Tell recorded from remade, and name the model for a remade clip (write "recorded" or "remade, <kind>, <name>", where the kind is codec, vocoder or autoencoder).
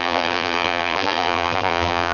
remade, vocoder, BigVGAN v2